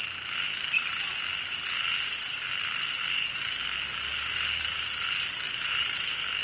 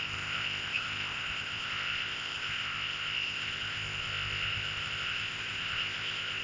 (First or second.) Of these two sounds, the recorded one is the first